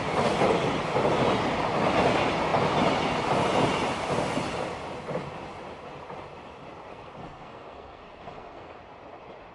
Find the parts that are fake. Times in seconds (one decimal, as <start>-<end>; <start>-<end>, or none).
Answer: 6.9-8.8